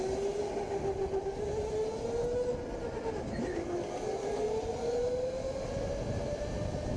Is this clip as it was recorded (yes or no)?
yes